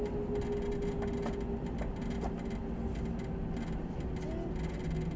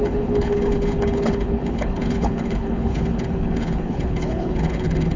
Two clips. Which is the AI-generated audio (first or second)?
second